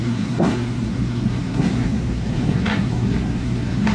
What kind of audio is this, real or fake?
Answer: fake